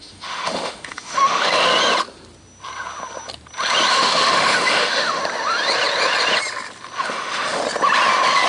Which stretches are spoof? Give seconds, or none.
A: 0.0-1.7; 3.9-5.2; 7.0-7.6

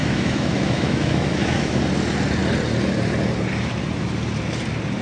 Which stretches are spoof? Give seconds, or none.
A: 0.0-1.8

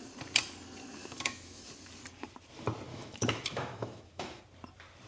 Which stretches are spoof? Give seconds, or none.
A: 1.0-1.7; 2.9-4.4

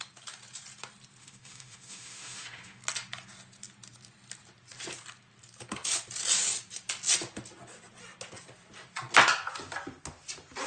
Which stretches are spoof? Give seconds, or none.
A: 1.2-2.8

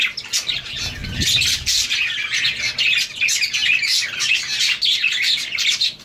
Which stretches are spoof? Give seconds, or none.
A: none

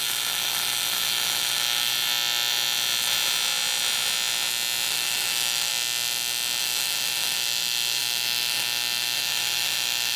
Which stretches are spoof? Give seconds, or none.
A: 0.0-1.9; 4.9-5.7; 6.6-10.2

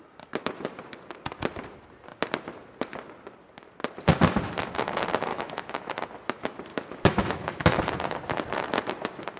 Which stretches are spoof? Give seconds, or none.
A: 5.3-5.9; 6.7-7.8

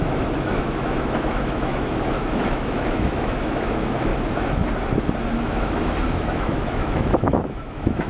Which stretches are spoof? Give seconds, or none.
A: 0.0-4.1; 5.3-8.1